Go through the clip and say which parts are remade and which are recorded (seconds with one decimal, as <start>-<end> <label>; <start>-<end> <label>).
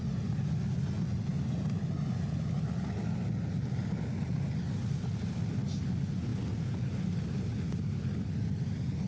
0.0-9.1 recorded